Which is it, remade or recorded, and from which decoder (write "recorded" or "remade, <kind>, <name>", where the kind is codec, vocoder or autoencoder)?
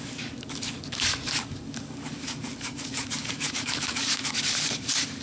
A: remade, codec, DAC